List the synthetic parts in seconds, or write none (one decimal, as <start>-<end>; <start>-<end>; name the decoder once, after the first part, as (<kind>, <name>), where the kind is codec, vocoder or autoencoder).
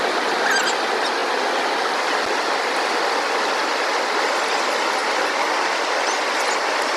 none